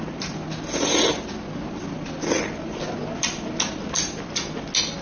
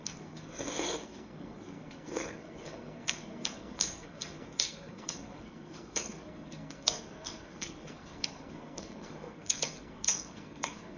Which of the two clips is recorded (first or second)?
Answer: first